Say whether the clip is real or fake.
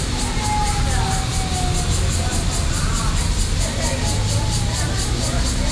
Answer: real